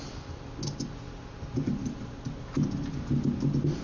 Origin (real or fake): real